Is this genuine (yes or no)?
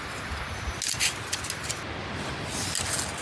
yes